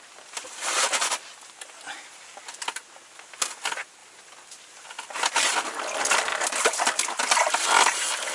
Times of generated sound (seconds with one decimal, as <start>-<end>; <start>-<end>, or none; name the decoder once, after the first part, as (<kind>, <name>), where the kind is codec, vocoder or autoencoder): 4.0-5.4 (vocoder, BigVGAN v2); 6.3-8.3